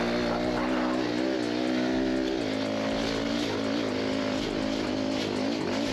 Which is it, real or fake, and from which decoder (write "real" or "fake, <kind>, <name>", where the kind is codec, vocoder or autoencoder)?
real